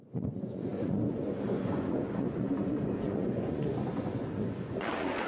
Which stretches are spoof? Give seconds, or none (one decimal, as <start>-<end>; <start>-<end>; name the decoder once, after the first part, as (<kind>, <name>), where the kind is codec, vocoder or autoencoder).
0.0-5.3 (vocoder, Vocos)